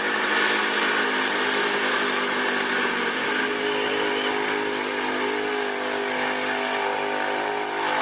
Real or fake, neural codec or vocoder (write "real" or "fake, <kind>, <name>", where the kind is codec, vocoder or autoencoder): real